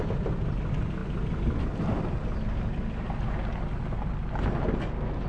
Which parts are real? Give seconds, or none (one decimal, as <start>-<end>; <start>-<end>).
0.0-5.3